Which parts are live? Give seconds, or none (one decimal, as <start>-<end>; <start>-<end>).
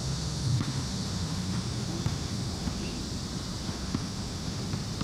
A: 3.0-3.6; 4.6-5.0